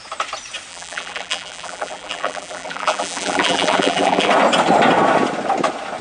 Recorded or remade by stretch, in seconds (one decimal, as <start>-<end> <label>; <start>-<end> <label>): 0.0-0.7 recorded; 0.7-4.3 remade; 4.3-6.0 recorded